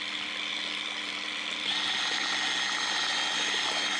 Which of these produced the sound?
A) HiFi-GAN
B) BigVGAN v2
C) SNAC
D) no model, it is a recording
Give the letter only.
D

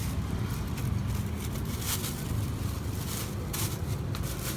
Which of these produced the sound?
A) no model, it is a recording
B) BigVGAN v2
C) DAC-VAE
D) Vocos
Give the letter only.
A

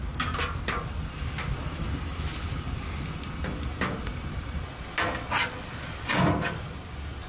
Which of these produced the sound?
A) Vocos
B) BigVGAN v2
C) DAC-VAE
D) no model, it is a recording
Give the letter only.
D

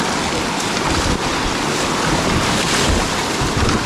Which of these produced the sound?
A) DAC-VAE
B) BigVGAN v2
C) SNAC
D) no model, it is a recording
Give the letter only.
D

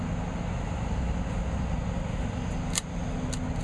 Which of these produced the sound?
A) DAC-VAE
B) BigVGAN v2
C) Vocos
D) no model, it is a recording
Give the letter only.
D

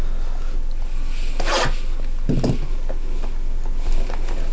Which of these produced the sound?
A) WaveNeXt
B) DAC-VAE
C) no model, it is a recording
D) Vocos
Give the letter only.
C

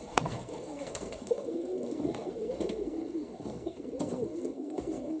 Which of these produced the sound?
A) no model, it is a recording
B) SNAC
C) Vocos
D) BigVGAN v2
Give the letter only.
B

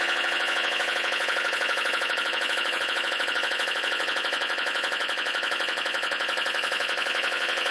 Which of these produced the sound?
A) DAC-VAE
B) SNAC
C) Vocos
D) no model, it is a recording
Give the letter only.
C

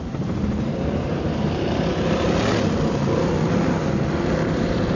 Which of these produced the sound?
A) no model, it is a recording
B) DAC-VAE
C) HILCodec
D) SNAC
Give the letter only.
A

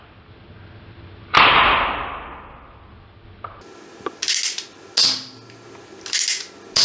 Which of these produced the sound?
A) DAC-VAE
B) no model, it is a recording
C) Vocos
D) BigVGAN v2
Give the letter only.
B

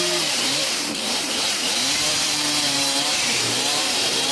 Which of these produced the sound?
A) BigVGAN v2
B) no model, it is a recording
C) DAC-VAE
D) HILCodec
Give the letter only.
A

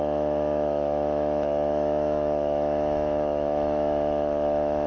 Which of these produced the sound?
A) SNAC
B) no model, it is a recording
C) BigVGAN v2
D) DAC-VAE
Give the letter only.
D